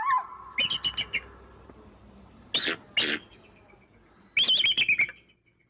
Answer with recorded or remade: recorded